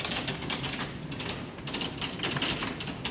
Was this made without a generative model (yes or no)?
yes